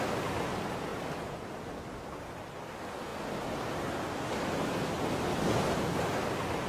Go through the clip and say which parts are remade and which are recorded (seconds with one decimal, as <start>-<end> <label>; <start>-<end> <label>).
0.0-6.7 recorded